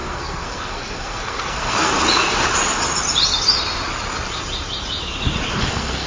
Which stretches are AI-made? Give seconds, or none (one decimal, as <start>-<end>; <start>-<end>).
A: 0.0-1.9; 5.6-6.1